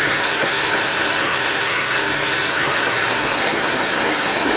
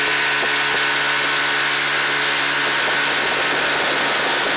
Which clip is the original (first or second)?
second